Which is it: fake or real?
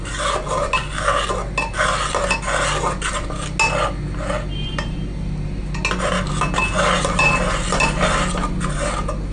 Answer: real